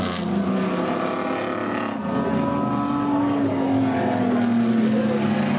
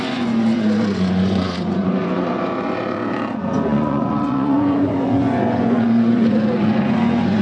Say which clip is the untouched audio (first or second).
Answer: first